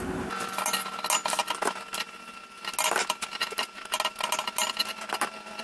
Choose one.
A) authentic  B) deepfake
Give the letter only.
A